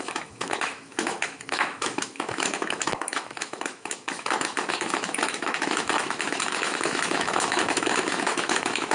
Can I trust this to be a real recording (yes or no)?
no